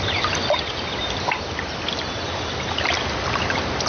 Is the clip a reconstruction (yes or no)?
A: yes